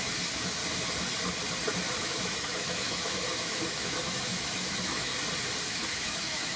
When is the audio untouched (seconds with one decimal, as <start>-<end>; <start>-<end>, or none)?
0.6-2.0; 5.1-5.7